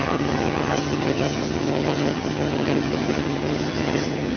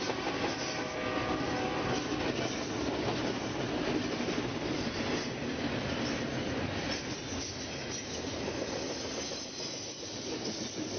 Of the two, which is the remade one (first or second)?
first